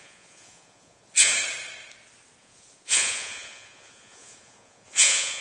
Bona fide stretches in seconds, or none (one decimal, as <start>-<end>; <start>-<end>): 1.3-2.4